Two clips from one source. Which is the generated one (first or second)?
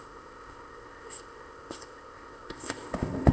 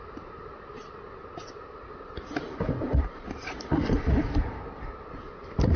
first